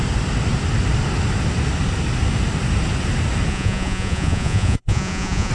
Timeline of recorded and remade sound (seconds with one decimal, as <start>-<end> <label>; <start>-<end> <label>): 0.0-3.5 recorded; 3.5-5.5 remade